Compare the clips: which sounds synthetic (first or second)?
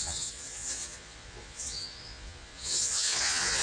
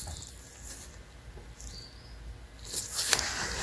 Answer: first